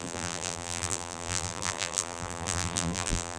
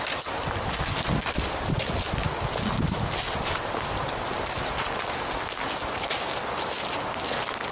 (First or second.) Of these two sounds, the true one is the second